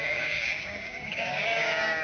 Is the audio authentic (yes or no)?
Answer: no